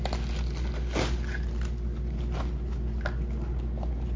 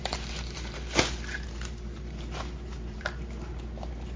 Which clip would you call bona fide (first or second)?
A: first